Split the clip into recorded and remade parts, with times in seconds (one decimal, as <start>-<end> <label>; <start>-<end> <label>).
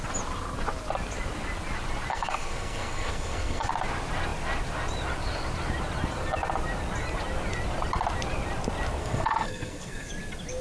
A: 0.0-2.1 recorded; 2.1-3.7 remade; 3.7-9.0 recorded; 9.0-10.1 remade; 10.1-10.6 recorded